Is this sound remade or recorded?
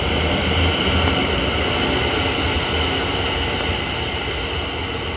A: recorded